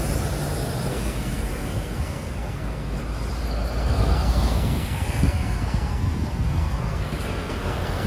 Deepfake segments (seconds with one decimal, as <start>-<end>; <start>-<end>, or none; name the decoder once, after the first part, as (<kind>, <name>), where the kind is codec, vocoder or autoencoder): 0.9-3.0 (codec, SNAC); 3.8-8.1